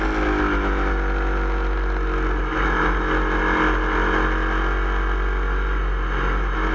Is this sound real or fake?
real